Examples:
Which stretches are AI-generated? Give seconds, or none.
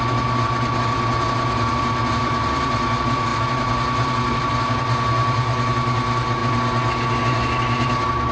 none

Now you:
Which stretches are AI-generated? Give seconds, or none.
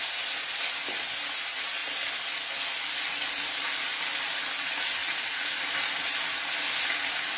1.8-4.4 (vocoder, BigVGAN v2); 5.0-6.5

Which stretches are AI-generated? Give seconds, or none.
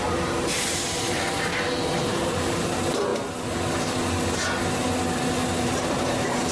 0.0-3.1 (vocoder, BigVGAN v2); 5.6-6.5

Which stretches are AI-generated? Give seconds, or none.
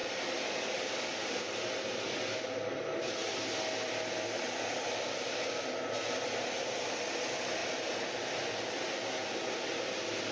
none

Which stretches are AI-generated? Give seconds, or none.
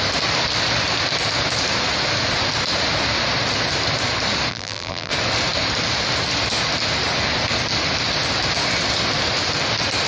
4.5-5.1 (vocoder, BigVGAN v2)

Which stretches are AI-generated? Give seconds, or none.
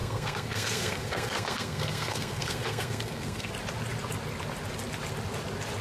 0.0-3.5 (codec, SNAC)